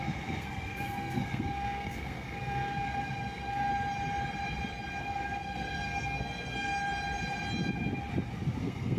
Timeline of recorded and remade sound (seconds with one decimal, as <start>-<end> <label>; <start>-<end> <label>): 0.0-3.7 remade; 3.7-5.0 recorded; 5.0-6.7 remade; 6.7-8.6 recorded; 8.6-9.0 remade

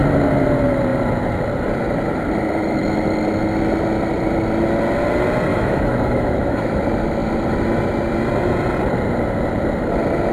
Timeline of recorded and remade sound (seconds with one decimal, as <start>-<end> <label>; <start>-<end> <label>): 0.0-5.5 recorded; 5.5-6.8 remade; 6.8-10.3 recorded